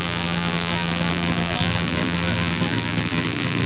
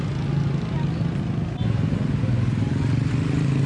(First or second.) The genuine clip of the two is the second